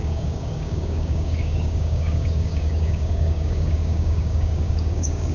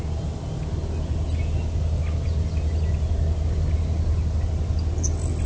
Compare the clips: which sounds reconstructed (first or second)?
first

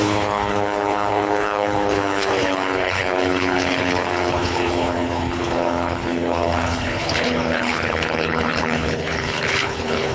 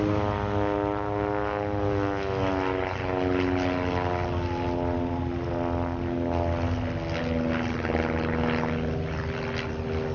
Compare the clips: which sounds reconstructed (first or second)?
first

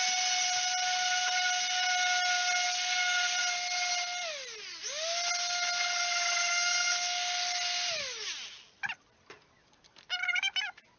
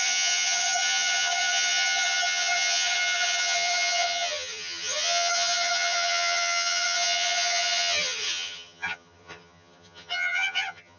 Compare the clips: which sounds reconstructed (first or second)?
second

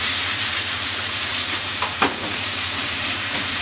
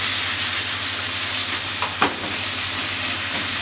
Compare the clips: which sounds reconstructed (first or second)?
first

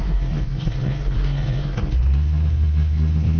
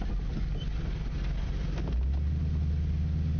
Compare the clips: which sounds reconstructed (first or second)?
first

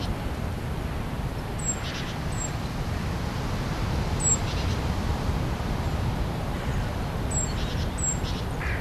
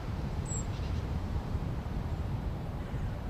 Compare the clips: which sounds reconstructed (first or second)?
second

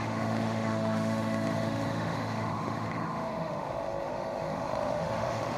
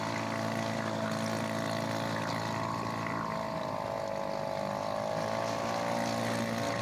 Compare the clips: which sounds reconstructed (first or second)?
first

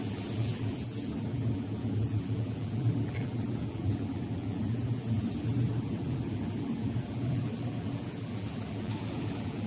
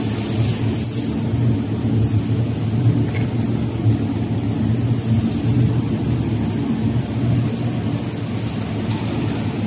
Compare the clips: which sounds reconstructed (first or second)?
first